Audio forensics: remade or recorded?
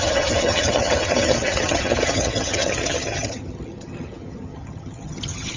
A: remade